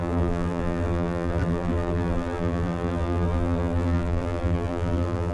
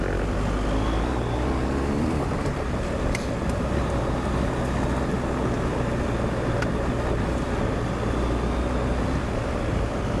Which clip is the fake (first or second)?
first